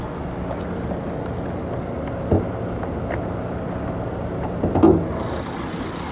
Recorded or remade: recorded